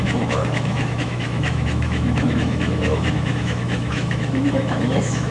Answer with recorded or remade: remade